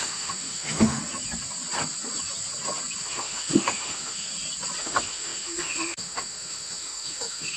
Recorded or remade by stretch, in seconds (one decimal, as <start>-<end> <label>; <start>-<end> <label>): 0.0-1.0 remade; 1.0-3.0 recorded; 3.0-4.3 remade; 4.3-4.8 recorded; 4.8-7.6 remade